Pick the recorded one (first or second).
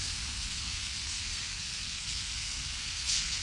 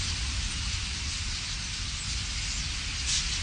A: second